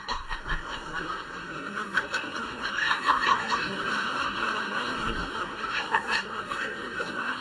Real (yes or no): no